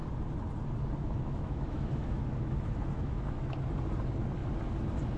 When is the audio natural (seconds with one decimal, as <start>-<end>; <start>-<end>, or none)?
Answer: 0.0-1.0; 3.4-5.2

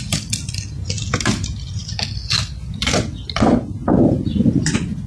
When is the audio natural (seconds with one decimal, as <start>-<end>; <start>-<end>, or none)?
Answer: 0.0-5.1

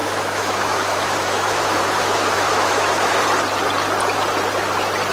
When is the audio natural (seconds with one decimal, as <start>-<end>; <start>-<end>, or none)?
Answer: 3.1-5.1

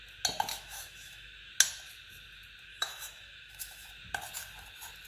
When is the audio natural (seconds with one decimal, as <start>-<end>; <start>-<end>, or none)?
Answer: 0.0-0.5; 1.5-2.7; 3.9-5.1

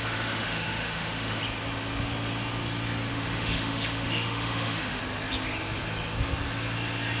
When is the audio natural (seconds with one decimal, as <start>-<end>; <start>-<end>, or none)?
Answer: 1.4-3.1; 5.0-7.2

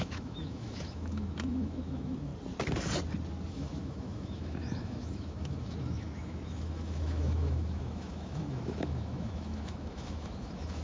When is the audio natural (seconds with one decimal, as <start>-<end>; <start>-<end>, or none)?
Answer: 2.3-3.5

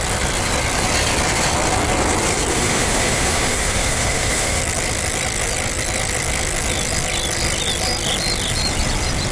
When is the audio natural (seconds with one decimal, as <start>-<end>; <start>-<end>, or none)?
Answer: 0.0-2.5; 4.6-9.3